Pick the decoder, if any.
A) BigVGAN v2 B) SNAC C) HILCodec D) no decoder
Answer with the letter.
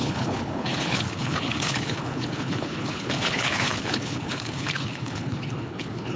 C